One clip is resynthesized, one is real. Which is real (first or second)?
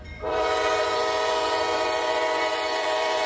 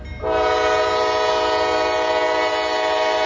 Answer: second